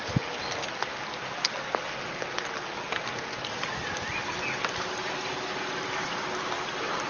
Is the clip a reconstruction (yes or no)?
no